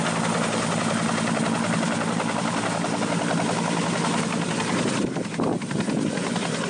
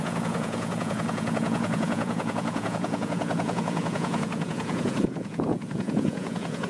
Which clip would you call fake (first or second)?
second